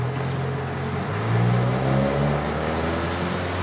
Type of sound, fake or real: real